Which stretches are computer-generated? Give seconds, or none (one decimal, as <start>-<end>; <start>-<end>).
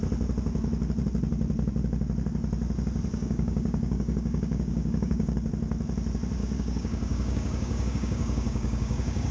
3.1-5.5; 6.4-9.3